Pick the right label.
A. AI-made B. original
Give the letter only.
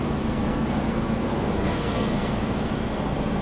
A